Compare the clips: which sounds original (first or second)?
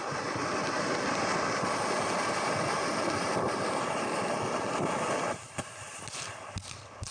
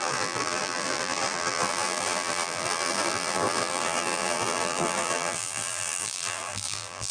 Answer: first